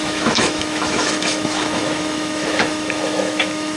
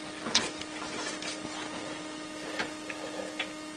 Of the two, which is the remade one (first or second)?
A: first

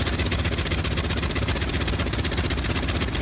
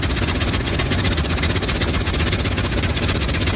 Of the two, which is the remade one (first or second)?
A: second